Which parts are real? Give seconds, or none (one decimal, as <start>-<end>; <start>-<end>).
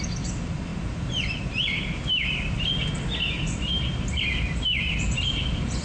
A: 0.0-5.8